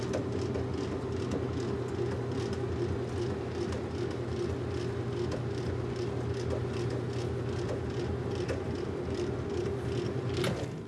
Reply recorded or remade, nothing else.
recorded